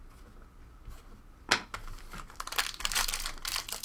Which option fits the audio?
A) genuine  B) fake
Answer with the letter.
A